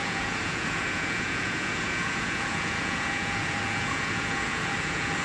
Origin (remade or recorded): remade